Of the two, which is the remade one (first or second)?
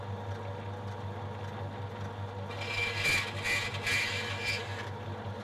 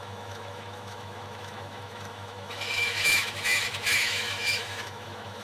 second